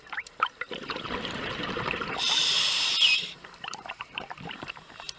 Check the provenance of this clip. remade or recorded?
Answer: remade